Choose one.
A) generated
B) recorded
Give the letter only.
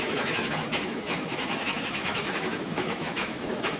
A